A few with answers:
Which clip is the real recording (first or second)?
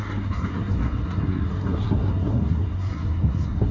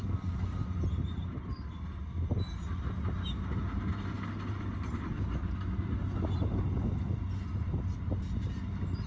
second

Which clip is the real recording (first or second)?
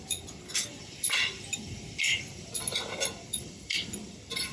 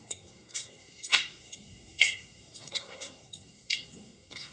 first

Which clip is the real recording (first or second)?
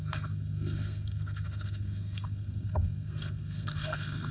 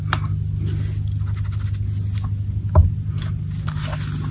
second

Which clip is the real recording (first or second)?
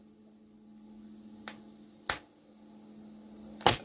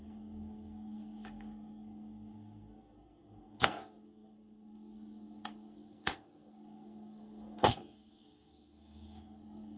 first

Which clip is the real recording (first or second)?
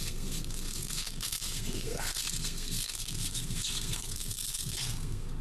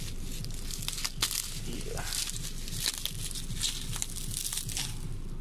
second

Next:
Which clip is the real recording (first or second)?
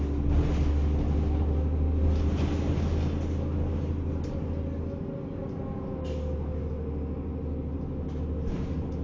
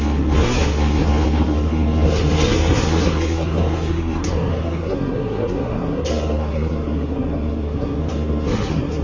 first